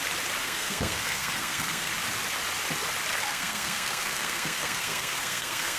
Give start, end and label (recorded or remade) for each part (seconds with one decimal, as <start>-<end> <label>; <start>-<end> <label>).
0.0-0.4 recorded; 0.4-1.9 remade; 1.9-3.1 recorded; 3.1-5.8 remade